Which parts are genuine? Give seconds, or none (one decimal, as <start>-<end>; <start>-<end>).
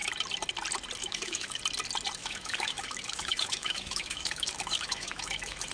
0.0-1.0; 1.6-2.2